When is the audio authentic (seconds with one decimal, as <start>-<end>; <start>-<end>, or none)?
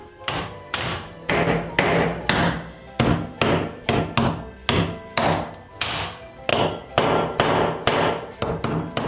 1.3-9.1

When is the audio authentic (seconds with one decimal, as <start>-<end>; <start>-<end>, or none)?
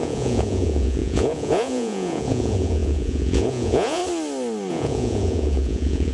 4.0-4.7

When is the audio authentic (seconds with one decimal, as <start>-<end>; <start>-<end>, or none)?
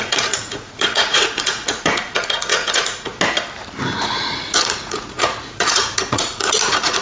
3.1-4.0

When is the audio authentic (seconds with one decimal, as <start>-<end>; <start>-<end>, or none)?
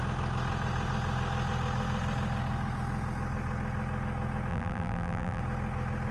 0.0-4.5; 5.4-6.1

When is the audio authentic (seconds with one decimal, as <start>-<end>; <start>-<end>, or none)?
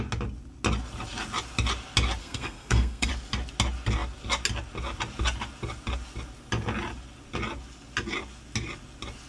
0.0-2.2; 3.1-9.3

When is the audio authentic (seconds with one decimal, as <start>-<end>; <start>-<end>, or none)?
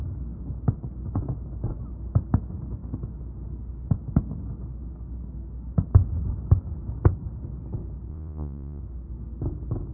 0.0-8.1; 8.8-9.9